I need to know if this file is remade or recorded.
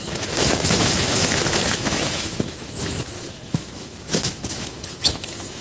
remade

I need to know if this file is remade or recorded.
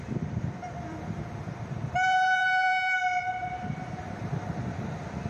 remade